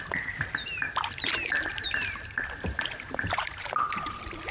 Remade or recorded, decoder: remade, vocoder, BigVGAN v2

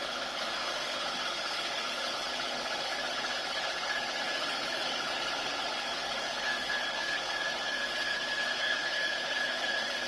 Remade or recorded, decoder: remade, codec, HILCodec